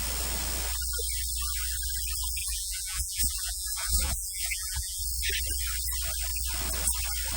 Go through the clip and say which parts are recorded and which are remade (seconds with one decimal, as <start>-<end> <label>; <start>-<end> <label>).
0.0-2.4 recorded; 2.4-5.0 remade; 5.0-7.4 recorded